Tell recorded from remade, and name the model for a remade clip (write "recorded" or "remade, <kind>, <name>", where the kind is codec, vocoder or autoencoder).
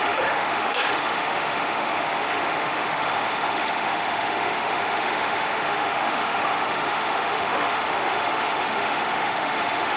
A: remade, autoencoder, DAC-VAE